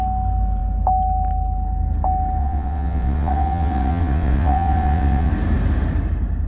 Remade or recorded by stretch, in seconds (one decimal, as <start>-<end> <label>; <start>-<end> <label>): 0.0-2.4 recorded; 2.4-5.3 remade; 5.3-6.5 recorded

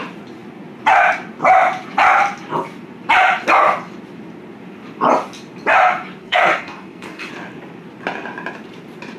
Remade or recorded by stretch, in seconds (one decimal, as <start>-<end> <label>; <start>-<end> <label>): 0.0-6.2 recorded; 6.2-7.3 remade; 7.3-9.2 recorded